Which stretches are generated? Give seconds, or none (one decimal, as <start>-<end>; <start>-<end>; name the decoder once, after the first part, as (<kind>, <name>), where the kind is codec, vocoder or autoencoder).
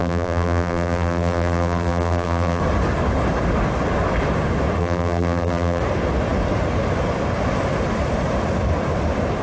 0.0-2.6 (vocoder, BigVGAN v2); 4.8-5.8